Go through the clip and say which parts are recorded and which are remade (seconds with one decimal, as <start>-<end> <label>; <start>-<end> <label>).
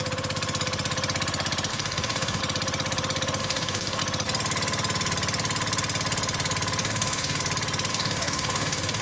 0.0-1.7 recorded; 1.7-2.4 remade; 2.4-3.4 recorded; 3.4-4.0 remade; 4.0-6.8 recorded; 6.8-7.4 remade; 7.4-7.9 recorded; 7.9-9.0 remade